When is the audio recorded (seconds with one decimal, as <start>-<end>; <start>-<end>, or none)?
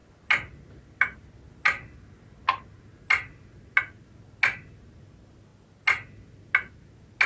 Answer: 0.0-7.3